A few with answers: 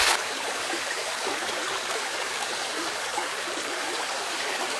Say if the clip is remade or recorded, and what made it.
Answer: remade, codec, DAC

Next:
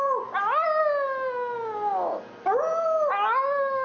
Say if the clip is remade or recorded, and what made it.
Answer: recorded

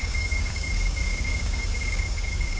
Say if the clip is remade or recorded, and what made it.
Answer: remade, codec, DAC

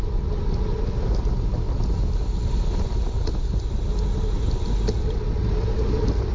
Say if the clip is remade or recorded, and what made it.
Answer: recorded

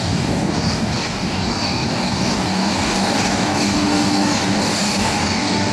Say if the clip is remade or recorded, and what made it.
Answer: remade, codec, DAC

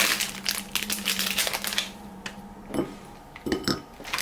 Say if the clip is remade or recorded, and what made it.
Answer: recorded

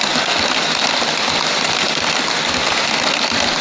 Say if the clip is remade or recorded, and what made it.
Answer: recorded